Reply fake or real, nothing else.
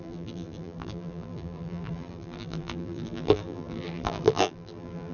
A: fake